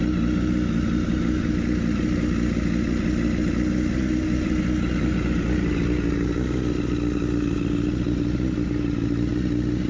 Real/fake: real